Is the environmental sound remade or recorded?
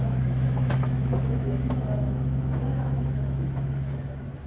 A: remade